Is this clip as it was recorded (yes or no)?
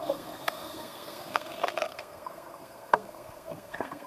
no